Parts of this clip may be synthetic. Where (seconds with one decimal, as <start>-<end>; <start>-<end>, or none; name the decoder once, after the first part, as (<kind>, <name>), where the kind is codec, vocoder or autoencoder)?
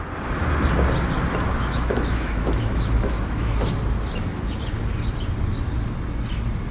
1.5-3.7 (autoencoder, DAC-VAE)